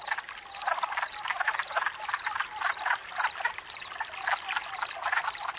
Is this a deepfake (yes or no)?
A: no